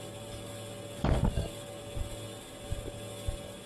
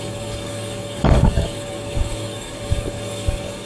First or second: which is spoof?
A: second